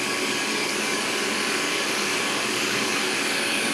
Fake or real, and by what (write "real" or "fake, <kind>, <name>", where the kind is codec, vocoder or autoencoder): fake, codec, DAC